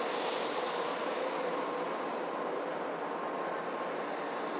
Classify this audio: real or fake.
real